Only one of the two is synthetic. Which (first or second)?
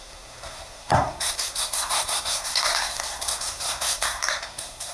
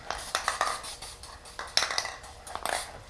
first